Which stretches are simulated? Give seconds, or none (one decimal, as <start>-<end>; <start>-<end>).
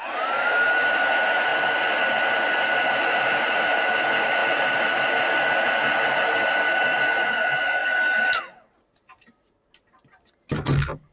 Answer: 0.0-1.5; 2.9-4.4; 7.2-7.8; 9.2-11.1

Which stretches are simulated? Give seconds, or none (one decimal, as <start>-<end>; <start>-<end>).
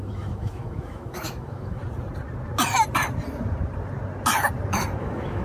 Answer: 0.0-1.8; 5.0-5.4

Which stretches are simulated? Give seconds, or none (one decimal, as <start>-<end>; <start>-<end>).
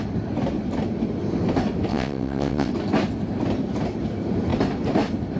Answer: 1.9-2.7